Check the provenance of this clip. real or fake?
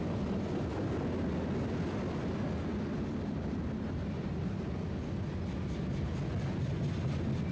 real